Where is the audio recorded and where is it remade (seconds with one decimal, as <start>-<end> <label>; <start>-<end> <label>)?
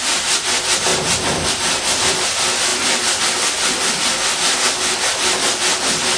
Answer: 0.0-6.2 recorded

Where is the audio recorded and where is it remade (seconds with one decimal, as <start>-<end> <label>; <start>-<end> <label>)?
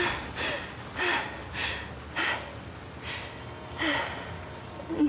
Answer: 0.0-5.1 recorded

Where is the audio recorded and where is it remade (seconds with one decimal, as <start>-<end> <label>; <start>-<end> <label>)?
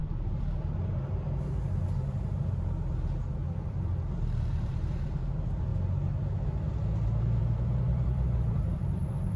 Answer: 0.0-0.6 remade; 0.6-3.4 recorded; 3.4-5.2 remade; 5.2-7.4 recorded; 7.4-9.4 remade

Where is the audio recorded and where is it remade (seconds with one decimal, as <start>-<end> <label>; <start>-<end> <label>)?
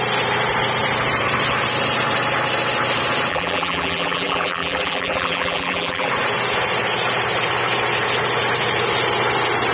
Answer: 0.0-3.3 recorded; 3.3-6.1 remade; 6.1-9.7 recorded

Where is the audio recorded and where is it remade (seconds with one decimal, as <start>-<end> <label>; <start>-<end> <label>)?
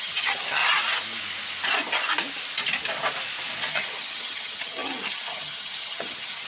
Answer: 0.0-0.6 remade; 0.6-3.7 recorded; 3.7-6.5 remade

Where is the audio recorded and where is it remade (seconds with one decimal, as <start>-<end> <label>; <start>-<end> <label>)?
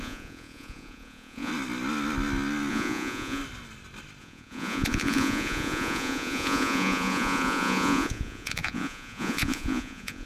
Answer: 0.0-1.5 remade; 1.5-2.7 recorded; 2.7-3.4 remade; 3.4-4.2 recorded; 4.2-10.3 remade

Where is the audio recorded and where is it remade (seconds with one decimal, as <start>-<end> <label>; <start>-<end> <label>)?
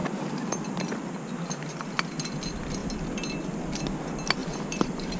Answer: 0.0-4.4 recorded; 4.4-5.2 remade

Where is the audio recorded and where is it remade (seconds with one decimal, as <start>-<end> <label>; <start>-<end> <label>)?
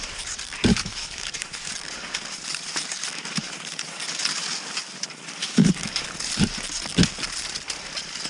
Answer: 0.0-0.7 recorded; 0.7-1.7 remade; 1.7-5.4 recorded; 5.4-6.0 remade; 6.0-8.3 recorded